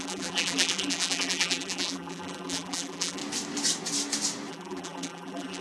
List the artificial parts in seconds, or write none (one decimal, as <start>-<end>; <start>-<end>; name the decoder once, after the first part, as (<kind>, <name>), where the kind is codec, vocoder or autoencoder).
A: 0.0-3.2 (vocoder, BigVGAN v2); 4.5-5.6